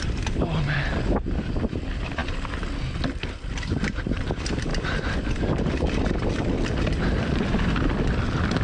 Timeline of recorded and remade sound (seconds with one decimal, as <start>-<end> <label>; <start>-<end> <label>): 0.0-2.2 remade; 2.2-3.1 recorded; 3.1-8.6 remade